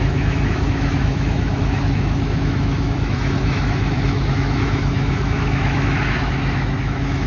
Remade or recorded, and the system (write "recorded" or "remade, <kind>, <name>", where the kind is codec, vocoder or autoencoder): remade, autoencoder, DAC-VAE